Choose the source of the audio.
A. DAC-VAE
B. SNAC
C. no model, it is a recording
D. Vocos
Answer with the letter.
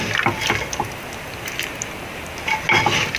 C